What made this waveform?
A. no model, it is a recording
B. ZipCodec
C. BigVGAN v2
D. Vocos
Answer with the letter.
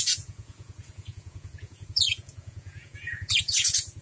D